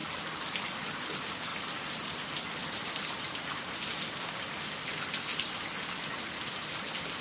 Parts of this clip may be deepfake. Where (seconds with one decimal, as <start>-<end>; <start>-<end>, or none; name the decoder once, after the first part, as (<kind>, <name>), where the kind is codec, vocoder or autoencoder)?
none